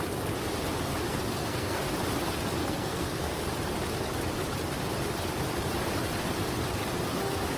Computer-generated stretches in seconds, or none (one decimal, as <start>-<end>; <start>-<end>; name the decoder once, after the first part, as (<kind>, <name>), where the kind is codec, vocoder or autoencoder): 1.1-1.8 (codec, SNAC); 2.6-3.4